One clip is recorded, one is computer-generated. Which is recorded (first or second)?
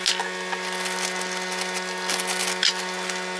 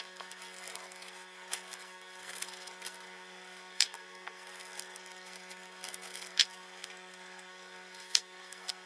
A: first